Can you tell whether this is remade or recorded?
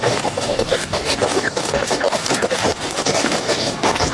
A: remade